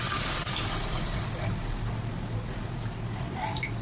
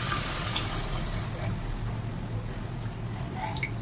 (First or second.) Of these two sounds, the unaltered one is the second